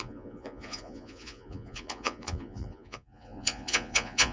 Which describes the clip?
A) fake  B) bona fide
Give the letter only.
A